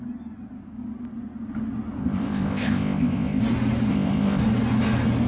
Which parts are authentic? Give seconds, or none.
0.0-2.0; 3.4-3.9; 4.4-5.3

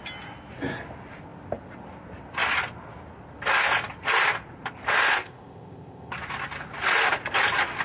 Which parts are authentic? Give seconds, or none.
0.0-5.1; 6.1-7.8

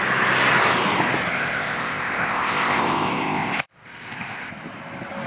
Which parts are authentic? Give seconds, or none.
0.0-1.3; 4.5-5.3

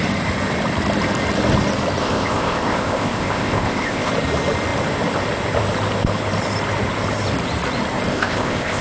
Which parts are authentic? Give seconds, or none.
0.0-2.0; 4.1-8.1

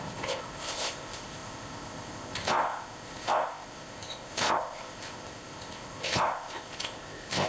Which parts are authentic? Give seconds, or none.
none

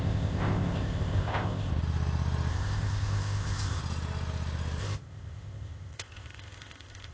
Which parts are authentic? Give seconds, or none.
1.7-2.5; 3.8-4.8

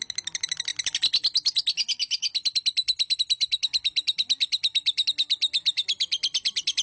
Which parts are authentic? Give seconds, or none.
0.0-6.8